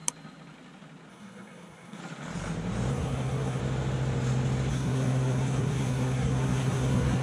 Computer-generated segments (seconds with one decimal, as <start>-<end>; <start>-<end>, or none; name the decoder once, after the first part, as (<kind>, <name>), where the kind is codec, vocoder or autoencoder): 1.1-2.0 (codec, SNAC); 2.9-3.6; 4.7-7.2